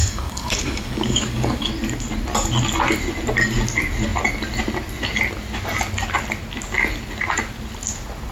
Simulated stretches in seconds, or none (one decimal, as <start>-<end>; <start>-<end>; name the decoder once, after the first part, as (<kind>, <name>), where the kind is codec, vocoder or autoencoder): 0.0-1.7 (codec, DAC)